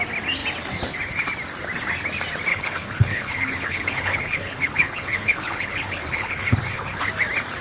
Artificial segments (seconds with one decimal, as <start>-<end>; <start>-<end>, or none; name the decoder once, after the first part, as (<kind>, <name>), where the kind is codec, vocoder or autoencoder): 2.5-7.1 (codec, HILCodec)